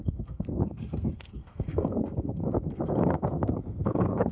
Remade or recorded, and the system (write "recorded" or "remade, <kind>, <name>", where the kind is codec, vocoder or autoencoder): remade, codec, SNAC